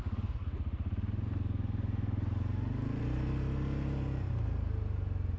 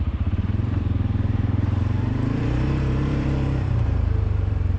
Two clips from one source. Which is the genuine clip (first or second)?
first